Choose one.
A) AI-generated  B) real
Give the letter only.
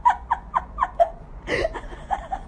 A